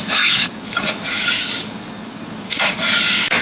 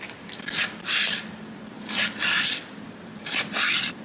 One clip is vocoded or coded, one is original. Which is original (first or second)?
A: second